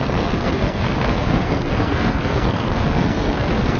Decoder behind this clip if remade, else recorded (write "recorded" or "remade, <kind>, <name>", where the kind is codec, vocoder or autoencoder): remade, codec, SNAC